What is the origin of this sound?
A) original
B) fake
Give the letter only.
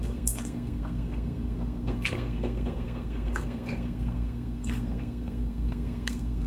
B